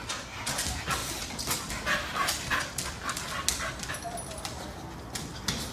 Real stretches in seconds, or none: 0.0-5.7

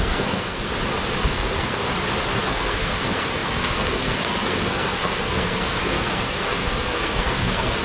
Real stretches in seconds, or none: 0.7-1.3; 1.8-2.4

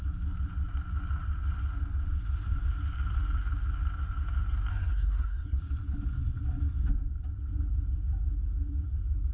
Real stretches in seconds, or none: 0.0-4.7; 5.6-9.3

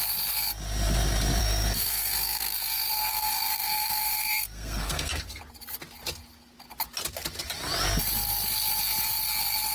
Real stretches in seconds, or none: 0.0-1.4; 5.4-9.7